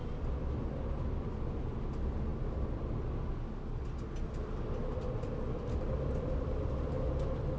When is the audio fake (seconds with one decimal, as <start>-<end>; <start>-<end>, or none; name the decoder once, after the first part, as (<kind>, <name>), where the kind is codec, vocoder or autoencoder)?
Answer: none